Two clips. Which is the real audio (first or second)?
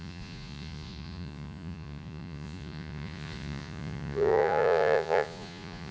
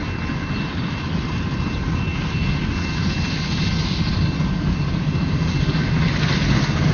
second